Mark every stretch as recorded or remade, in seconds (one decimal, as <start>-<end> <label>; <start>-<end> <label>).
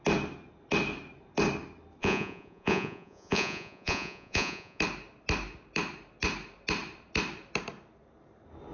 0.0-2.0 recorded; 2.0-4.8 remade; 4.8-8.7 recorded